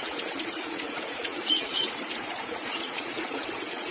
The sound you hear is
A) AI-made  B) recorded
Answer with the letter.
A